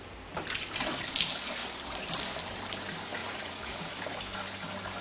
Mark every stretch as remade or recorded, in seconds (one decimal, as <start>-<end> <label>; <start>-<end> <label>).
0.0-3.2 recorded; 3.2-3.9 remade; 3.9-5.0 recorded